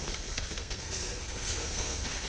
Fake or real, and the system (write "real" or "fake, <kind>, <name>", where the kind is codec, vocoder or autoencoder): fake, codec, SNAC